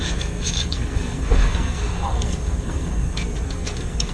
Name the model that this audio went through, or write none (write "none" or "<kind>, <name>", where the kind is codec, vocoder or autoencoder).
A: codec, SNAC